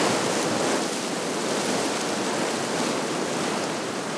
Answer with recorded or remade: recorded